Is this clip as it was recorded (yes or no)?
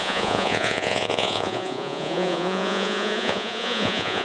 no